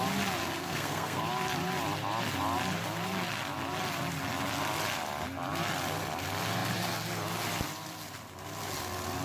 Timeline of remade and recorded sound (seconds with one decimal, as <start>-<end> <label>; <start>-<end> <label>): 0.0-0.4 recorded; 0.4-1.2 remade; 1.2-9.2 recorded